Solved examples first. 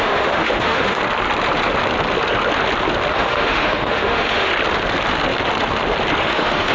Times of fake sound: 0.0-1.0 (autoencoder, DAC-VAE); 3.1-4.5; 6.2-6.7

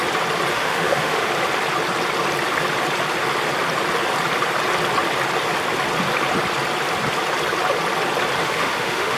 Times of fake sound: 0.5-1.3 (autoencoder, DAC-VAE); 8.4-9.2

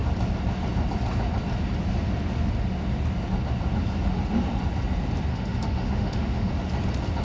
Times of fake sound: 5.3-6.5 (autoencoder, DAC-VAE)

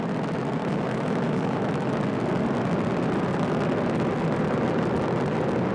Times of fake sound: 0.6-2.0 (autoencoder, DAC-VAE)

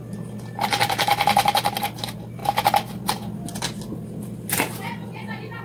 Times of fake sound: none